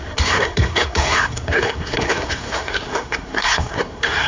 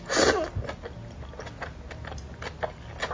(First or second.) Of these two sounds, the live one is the second